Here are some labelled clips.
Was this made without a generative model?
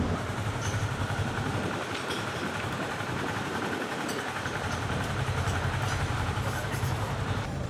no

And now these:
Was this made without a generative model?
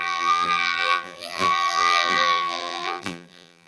no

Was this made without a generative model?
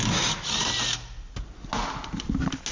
yes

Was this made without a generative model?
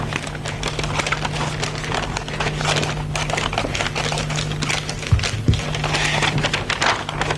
yes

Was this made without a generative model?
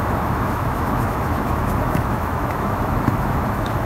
no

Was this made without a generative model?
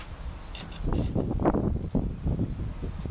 yes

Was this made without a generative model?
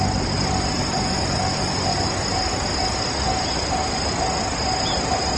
yes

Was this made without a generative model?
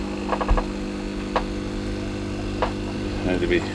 yes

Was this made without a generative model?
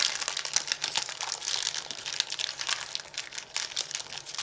yes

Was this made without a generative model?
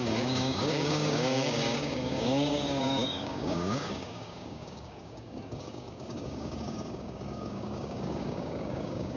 no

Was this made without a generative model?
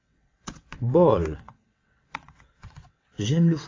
no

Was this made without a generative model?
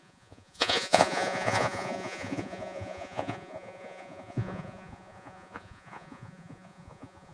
no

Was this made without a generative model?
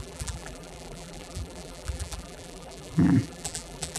no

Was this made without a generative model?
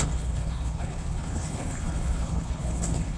no